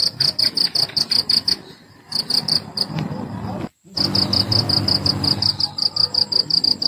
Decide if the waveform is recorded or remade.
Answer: recorded